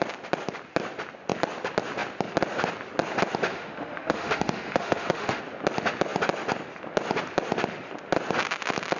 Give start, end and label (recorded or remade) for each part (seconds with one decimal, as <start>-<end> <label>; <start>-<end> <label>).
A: 0.0-3.5 recorded; 3.5-5.4 remade; 5.4-9.0 recorded